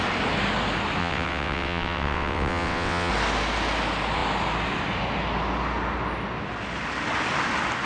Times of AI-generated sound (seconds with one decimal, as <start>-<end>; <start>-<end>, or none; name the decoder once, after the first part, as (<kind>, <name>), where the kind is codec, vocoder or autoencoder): 1.0-3.1 (vocoder, WaveNeXt)